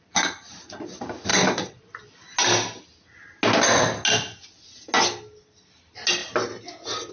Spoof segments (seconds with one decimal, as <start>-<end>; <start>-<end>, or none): 1.3-1.8